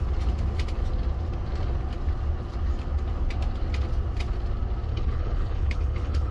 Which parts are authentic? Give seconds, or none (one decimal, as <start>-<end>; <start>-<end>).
0.0-4.9